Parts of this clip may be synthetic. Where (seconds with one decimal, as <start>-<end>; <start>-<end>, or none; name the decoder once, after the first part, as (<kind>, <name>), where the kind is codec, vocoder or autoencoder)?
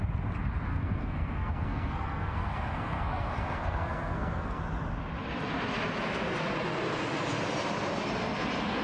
0.7-4.6 (codec, SNAC)